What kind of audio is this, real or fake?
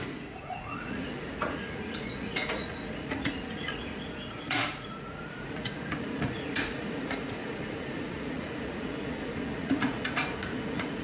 fake